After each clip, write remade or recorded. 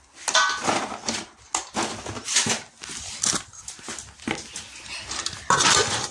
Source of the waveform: recorded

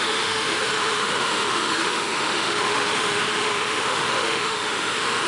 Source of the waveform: remade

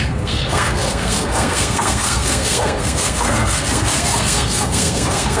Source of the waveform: remade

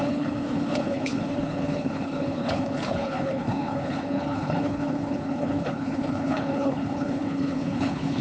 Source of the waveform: remade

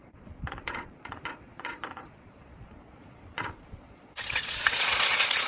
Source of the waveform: remade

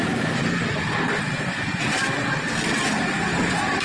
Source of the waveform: recorded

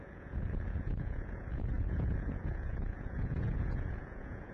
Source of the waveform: remade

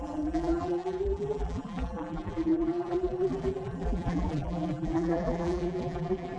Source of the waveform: remade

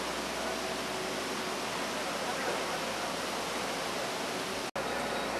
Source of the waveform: recorded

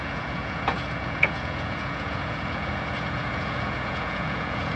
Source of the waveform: remade